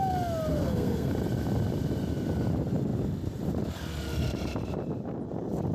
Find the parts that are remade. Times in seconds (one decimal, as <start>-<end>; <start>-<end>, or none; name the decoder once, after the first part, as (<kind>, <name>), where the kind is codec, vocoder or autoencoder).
0.5-1.1 (codec, SNAC)

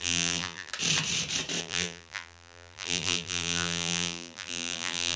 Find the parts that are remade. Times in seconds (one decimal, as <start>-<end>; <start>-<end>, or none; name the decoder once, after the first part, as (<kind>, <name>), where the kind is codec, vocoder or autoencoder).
0.0-0.7 (vocoder, BigVGAN v2); 1.6-5.2

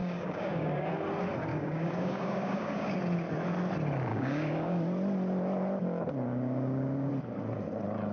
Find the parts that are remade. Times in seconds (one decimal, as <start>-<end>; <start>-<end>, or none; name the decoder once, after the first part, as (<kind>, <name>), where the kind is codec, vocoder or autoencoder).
0.0-0.9 (codec, DAC); 1.5-3.0; 4.1-4.8; 6.3-7.1

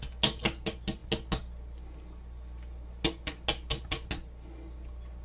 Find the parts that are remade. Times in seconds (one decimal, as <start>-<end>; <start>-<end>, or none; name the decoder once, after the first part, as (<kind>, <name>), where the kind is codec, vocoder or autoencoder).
none

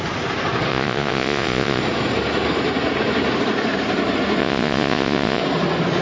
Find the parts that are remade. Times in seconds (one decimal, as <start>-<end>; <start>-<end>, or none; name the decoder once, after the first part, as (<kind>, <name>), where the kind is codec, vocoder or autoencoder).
0.7-1.8 (vocoder, Vocos); 4.4-5.4

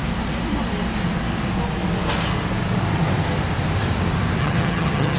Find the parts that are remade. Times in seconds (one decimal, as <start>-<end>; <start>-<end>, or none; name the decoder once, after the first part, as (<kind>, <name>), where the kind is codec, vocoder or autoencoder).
4.4-5.2 (vocoder, HiFi-GAN)

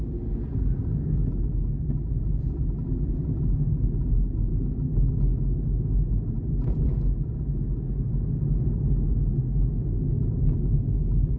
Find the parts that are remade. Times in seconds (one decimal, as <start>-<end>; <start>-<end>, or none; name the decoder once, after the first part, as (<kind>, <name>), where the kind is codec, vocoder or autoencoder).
4.5-5.1 (codec, DAC)

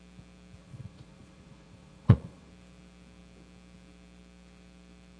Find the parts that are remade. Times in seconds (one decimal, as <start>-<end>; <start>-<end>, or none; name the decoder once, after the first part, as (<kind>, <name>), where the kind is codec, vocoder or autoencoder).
0.6-2.5 (vocoder, Vocos)